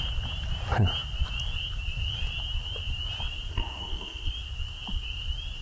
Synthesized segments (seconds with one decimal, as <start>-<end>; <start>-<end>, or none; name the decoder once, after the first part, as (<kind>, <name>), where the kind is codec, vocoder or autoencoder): 3.5-4.3 (codec, SNAC)